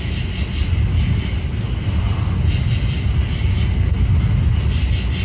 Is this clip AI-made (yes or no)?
no